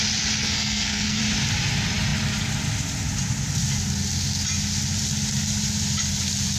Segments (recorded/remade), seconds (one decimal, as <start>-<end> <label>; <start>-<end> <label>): 0.0-0.4 recorded; 0.4-1.2 remade; 1.2-6.6 recorded